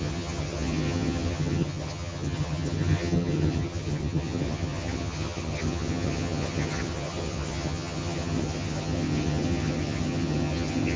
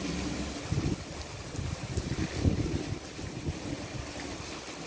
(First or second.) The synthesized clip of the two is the first